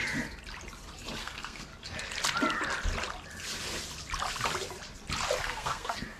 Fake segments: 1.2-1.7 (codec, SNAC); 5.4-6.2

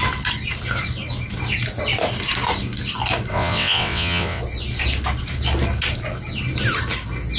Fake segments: 3.3-4.4 (vocoder, WaveNeXt)

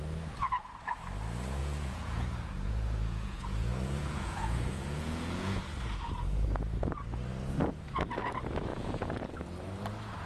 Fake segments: 1.6-5.6 (vocoder, Vocos); 8.7-9.4

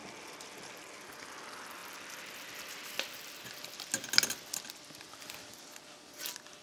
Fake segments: none

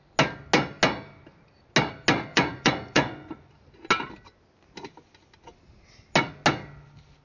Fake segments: 2.3-3.5 (vocoder, Vocos)

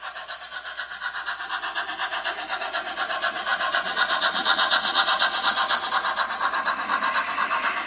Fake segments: 3.5-5.9 (vocoder, Vocos)

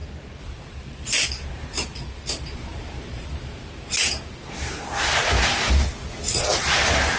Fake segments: 0.0-4.3 (vocoder, BigVGAN v2)